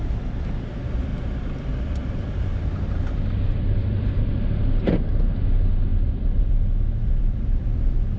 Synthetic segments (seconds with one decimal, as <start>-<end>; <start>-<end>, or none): 1.1-4.8; 5.9-6.4; 7.0-8.2